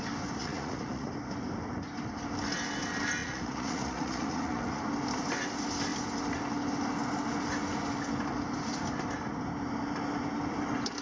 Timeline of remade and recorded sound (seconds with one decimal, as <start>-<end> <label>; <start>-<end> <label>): 0.0-0.4 recorded; 0.4-1.1 remade; 1.1-3.2 recorded; 3.2-4.8 remade; 4.8-11.0 recorded